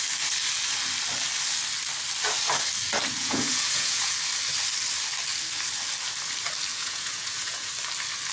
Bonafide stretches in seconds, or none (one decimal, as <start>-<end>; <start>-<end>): 0.0-3.2; 4.1-6.7; 7.7-8.3